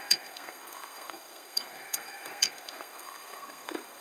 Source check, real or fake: fake